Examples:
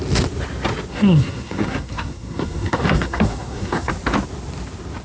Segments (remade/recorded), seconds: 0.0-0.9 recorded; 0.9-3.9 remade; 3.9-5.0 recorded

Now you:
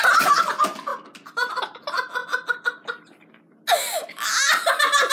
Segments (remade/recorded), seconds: 0.0-5.1 recorded

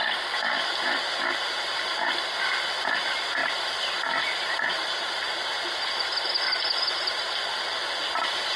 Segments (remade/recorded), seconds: 0.0-8.6 recorded

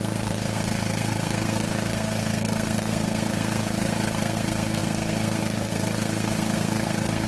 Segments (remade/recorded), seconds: 0.0-7.3 remade

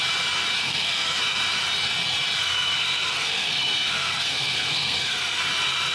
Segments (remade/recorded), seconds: 0.0-0.6 recorded; 0.6-1.2 remade; 1.2-2.4 recorded; 2.4-5.4 remade; 5.4-5.9 recorded